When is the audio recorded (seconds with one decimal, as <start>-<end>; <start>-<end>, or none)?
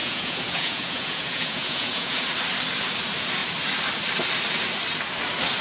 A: 2.2-5.6